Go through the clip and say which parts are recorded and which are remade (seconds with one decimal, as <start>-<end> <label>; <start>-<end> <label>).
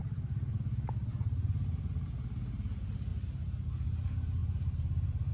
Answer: 0.0-0.6 remade; 0.6-4.4 recorded; 4.4-5.3 remade